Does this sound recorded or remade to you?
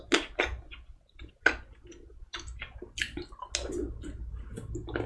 recorded